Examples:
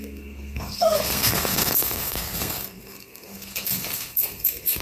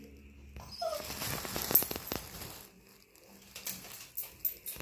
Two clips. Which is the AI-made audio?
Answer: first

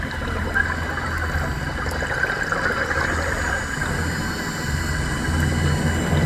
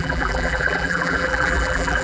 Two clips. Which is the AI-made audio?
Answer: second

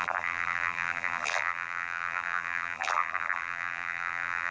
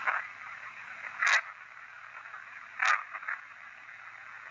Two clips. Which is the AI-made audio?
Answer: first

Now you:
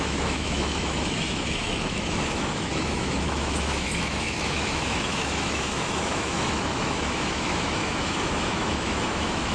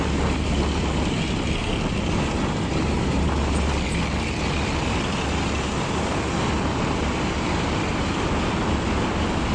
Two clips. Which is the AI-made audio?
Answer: first